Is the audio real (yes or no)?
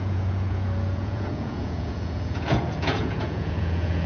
no